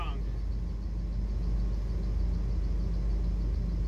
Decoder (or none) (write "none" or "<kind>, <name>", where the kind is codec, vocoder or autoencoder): none